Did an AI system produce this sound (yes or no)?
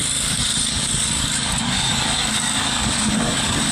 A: yes